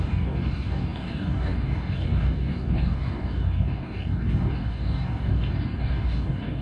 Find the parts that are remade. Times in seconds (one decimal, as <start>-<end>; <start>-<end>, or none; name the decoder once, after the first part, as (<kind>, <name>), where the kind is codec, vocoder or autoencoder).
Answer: 0.0-6.6 (codec, DAC)